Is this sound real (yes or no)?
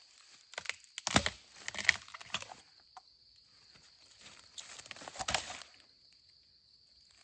yes